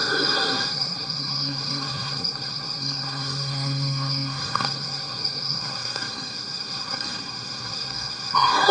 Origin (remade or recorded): remade